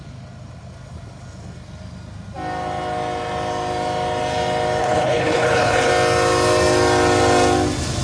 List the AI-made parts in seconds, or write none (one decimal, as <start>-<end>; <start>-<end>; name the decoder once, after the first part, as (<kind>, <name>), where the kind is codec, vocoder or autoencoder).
4.8-5.9 (codec, HILCodec)